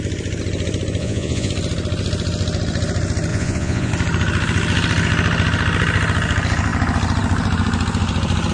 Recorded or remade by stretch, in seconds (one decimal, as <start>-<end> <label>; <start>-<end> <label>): 0.0-1.0 recorded; 1.0-1.5 remade; 1.5-3.3 recorded; 3.3-3.9 remade; 3.9-8.5 recorded